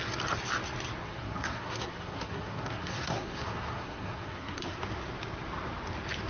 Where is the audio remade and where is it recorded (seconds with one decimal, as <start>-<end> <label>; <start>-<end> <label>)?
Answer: 0.0-1.0 recorded; 1.0-4.8 remade; 4.8-6.3 recorded